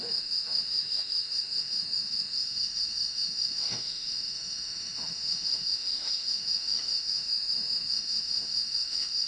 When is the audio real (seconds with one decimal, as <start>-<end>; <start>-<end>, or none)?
none